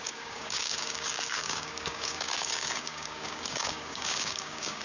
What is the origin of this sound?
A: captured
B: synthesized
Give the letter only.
B